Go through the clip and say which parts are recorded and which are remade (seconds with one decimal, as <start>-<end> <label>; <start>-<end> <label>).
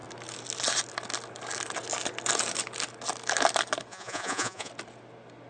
0.0-3.9 recorded; 3.9-4.7 remade; 4.7-5.5 recorded